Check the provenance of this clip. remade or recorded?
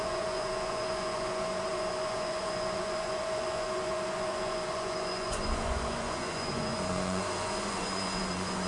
remade